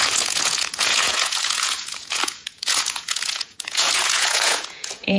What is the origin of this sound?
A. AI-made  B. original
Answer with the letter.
A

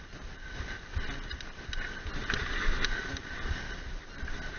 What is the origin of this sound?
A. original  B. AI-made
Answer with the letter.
A